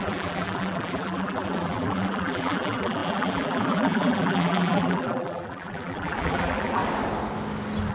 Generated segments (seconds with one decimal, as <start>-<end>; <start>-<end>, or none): 0.0-6.8